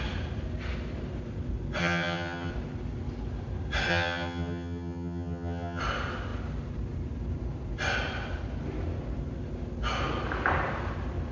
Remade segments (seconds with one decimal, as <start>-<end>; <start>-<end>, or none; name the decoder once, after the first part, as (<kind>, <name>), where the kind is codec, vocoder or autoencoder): 1.8-2.5 (vocoder, HiFi-GAN); 3.9-5.8